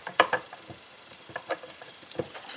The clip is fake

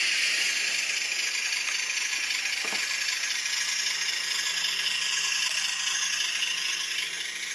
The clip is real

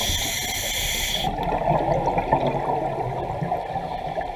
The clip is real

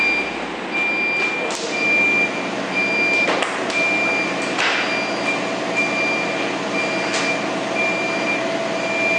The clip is real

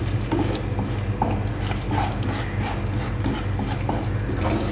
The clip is real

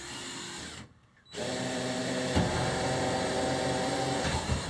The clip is fake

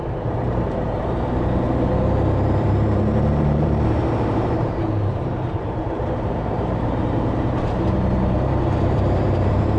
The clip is fake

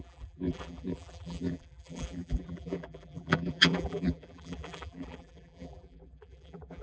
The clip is fake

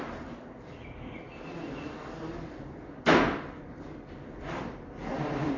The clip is fake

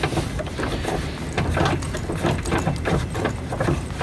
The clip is real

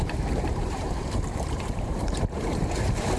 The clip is fake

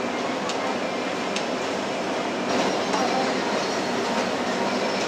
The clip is real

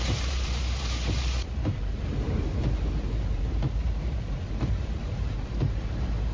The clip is fake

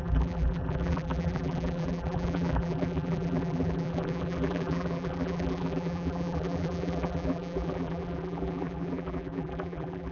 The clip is fake